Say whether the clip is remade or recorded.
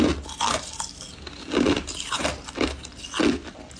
recorded